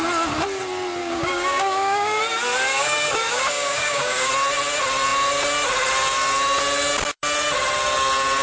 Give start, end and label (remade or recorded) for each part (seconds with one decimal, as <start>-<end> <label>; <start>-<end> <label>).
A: 0.0-1.0 recorded; 1.0-2.2 remade; 2.2-2.7 recorded; 2.7-4.3 remade; 4.3-8.4 recorded